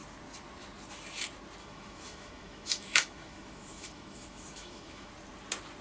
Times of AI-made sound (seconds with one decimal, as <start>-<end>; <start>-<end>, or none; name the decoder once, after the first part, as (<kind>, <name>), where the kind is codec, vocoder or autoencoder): 1.6-5.1 (autoencoder, DAC-VAE)